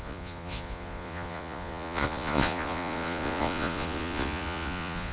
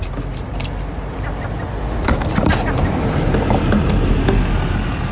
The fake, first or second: first